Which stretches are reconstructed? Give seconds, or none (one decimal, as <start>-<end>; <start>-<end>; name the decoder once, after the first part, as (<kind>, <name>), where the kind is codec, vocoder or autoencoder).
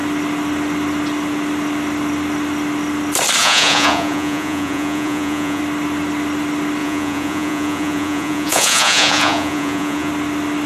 3.4-5.6 (vocoder, Vocos); 6.8-10.1